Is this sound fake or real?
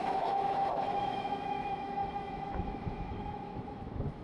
fake